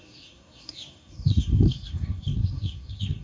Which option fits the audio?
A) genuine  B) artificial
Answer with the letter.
B